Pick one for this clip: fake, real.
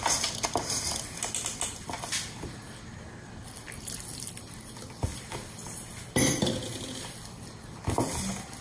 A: real